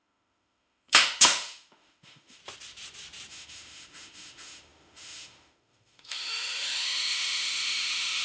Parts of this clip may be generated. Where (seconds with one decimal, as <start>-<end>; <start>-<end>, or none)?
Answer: 0.0-2.4; 3.3-8.2

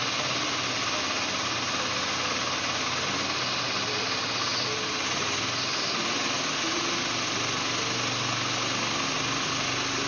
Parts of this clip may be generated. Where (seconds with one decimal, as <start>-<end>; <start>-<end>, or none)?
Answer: none

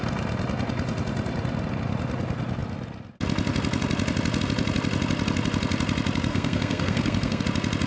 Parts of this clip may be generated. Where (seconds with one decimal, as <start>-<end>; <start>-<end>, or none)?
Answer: 6.3-7.4

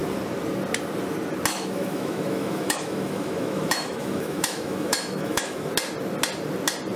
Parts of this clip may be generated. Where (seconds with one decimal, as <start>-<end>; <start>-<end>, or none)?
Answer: 1.5-5.7

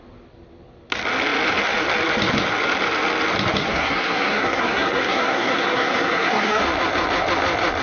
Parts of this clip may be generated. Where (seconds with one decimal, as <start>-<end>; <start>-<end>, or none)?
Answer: 3.6-6.6